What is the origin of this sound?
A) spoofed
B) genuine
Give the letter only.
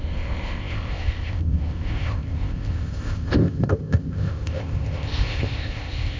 A